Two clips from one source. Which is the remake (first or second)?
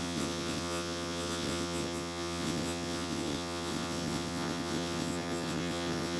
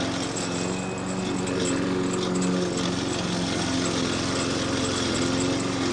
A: first